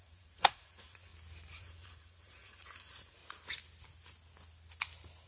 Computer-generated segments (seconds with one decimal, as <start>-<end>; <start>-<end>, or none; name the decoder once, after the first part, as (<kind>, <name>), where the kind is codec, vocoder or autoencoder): 0.0-1.1 (vocoder, Vocos); 1.6-3.2